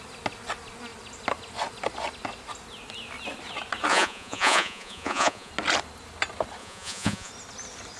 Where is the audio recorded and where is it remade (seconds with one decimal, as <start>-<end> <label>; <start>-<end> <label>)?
0.0-3.9 recorded; 3.9-5.5 remade; 5.5-6.6 recorded; 6.6-7.3 remade; 7.3-8.0 recorded